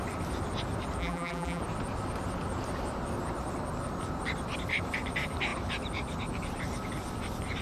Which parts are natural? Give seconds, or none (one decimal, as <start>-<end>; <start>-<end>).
0.0-1.0; 1.6-7.6